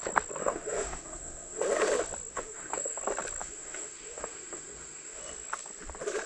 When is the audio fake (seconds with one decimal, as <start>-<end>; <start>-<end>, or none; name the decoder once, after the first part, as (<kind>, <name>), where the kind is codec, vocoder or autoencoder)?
0.4-1.6 (autoencoder, DAC-VAE); 2.3-3.0; 3.4-5.2